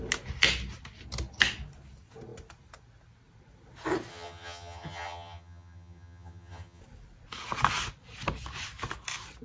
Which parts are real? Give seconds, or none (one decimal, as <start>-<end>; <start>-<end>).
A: 0.0-4.1; 6.8-9.4